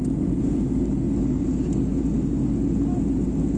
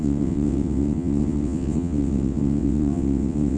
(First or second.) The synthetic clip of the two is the second